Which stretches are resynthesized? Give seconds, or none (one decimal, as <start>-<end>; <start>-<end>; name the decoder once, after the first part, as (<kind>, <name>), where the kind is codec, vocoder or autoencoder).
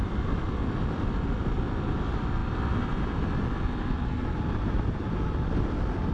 0.0-6.1 (vocoder, BigVGAN v2)